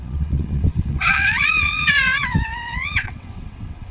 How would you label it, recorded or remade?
remade